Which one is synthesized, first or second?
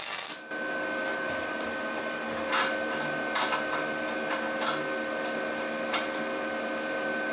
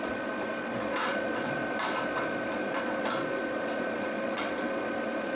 second